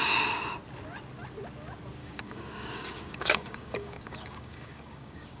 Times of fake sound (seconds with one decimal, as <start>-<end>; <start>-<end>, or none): 2.0-5.4